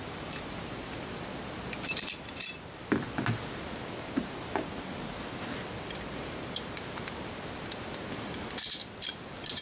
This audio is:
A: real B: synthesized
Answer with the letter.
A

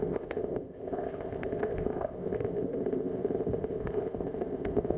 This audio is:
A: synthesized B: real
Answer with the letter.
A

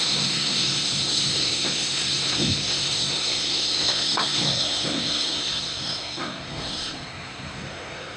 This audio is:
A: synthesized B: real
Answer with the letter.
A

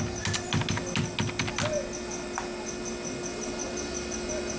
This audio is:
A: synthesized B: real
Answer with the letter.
B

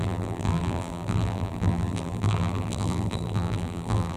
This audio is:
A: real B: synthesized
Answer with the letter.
B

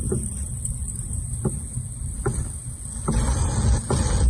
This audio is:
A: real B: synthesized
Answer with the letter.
A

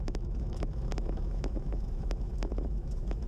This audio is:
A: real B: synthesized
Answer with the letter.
B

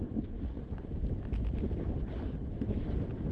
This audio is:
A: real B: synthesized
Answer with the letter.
A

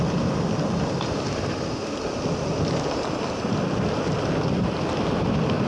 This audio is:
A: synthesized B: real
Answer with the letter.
B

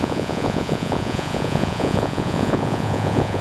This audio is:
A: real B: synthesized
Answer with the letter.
B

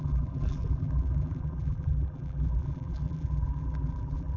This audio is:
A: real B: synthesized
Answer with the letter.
B